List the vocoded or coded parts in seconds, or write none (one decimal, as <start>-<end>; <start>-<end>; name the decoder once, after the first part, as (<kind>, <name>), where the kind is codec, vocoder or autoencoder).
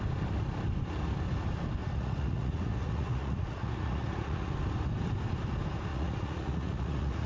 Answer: 1.8-4.5 (vocoder, Vocos); 5.9-7.3